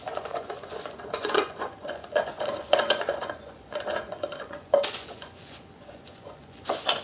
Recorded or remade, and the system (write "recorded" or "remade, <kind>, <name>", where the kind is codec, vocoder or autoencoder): remade, vocoder, Vocos